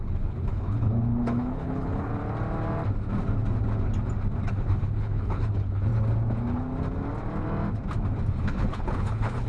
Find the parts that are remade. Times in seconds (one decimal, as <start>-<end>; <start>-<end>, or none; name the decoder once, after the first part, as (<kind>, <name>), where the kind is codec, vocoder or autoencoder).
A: 0.0-2.1 (codec, HILCodec); 4.5-5.9; 8.4-9.5